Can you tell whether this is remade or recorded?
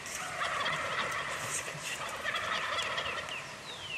remade